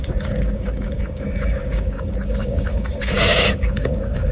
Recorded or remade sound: remade